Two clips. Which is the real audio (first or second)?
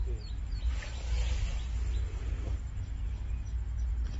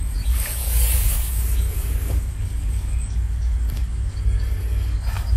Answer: first